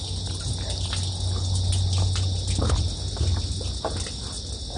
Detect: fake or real real